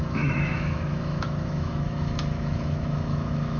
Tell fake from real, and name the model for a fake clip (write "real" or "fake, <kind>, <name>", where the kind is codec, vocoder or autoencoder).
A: fake, autoencoder, DAC-VAE